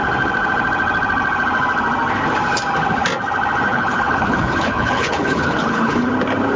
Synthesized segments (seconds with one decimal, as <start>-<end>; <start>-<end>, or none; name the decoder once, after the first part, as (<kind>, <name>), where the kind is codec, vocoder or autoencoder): 3.7-6.1 (codec, HILCodec)